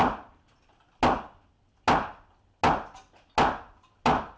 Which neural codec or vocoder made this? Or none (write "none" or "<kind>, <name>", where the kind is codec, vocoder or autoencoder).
none